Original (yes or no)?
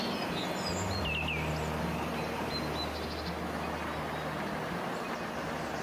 yes